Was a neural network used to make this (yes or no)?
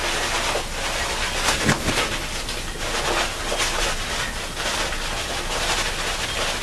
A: no